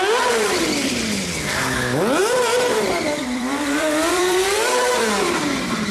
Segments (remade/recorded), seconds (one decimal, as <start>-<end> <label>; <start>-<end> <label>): 0.0-2.2 recorded; 2.2-4.9 remade; 4.9-5.9 recorded